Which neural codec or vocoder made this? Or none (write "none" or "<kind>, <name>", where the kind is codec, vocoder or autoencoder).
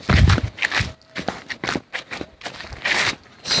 none